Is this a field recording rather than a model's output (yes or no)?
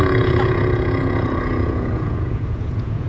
no